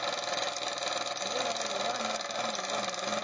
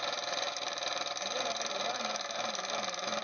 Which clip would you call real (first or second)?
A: first